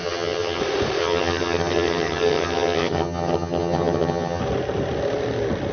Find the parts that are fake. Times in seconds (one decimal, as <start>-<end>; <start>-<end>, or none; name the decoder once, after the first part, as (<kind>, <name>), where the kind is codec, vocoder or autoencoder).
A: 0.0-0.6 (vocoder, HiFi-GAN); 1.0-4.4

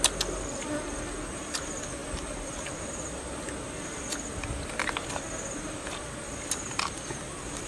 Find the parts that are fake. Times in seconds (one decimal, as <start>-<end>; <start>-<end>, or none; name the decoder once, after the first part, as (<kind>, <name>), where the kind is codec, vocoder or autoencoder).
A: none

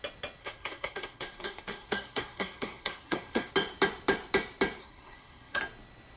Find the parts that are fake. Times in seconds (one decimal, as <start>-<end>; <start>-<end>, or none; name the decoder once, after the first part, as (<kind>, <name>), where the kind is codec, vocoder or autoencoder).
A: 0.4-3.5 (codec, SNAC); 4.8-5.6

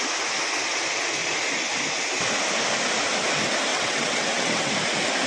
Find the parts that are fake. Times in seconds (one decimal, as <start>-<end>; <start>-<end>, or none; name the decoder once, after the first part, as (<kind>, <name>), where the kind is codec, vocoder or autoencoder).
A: 3.7-4.7 (vocoder, WaveNeXt)